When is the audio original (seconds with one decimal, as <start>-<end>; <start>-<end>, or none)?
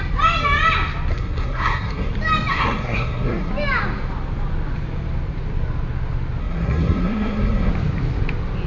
0.0-1.1; 2.1-2.5; 3.5-6.4; 7.7-8.7